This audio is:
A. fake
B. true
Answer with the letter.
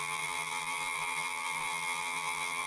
A